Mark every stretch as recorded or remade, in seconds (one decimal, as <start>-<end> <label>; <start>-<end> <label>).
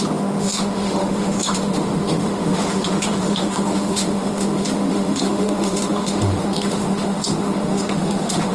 0.0-8.5 remade